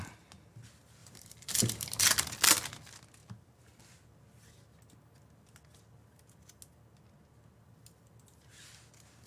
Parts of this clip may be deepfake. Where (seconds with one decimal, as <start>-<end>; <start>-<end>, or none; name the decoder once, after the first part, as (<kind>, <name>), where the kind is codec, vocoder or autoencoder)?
1.0-2.0 (vocoder, BigVGAN v2); 3.2-3.8